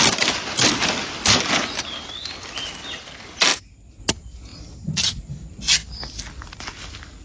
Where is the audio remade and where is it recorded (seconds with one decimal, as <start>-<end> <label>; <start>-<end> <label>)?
0.0-0.8 recorded; 0.8-1.4 remade; 1.4-4.5 recorded; 4.5-6.3 remade; 6.3-7.2 recorded